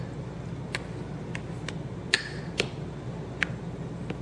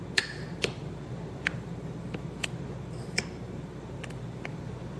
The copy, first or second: second